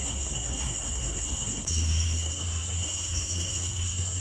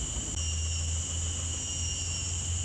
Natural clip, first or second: second